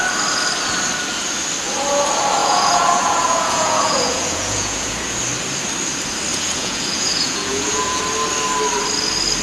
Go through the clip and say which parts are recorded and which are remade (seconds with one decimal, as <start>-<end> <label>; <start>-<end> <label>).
0.0-2.4 recorded; 2.4-5.2 remade; 5.2-6.3 recorded; 6.3-8.0 remade; 8.0-9.4 recorded